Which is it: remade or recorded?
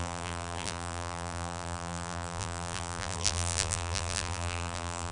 remade